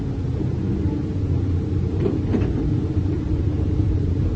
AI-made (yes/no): yes